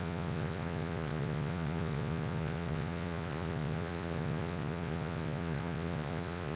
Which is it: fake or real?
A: fake